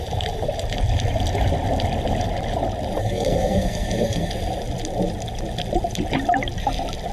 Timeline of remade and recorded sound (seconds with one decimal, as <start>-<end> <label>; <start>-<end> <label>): 0.0-3.0 recorded; 3.0-4.3 remade; 4.3-7.1 recorded